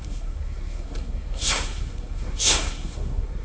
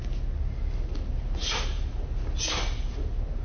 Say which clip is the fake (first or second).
first